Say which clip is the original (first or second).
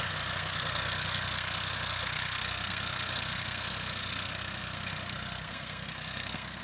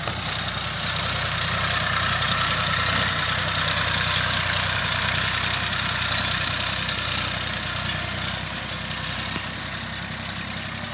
second